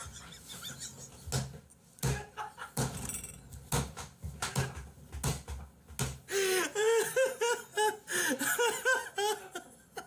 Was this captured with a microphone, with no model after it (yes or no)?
yes